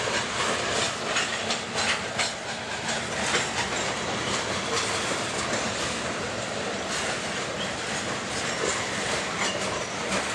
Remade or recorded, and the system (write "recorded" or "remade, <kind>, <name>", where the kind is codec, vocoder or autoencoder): recorded